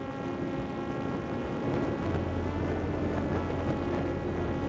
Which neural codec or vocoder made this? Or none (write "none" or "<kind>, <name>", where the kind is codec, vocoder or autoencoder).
none